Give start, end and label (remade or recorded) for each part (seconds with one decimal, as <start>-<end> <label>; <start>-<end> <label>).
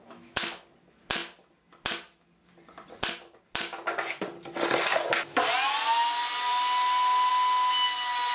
0.0-0.6 remade; 0.6-8.3 recorded